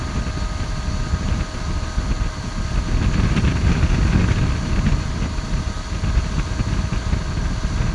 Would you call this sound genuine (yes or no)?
yes